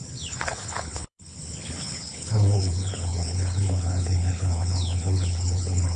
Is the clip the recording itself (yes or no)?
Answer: no